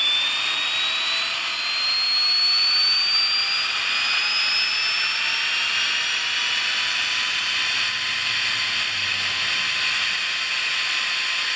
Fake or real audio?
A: real